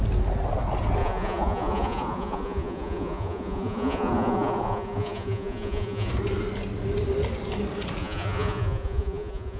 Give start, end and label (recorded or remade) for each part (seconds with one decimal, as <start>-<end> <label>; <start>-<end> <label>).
0.0-1.0 recorded; 1.0-6.1 remade; 6.1-8.0 recorded; 8.0-9.6 remade